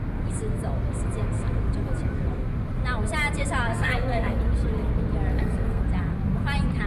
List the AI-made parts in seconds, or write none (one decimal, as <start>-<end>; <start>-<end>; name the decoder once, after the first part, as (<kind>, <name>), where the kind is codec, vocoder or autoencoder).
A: 3.7-4.4 (codec, SNAC); 5.3-5.8